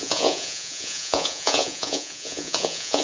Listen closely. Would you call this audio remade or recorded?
remade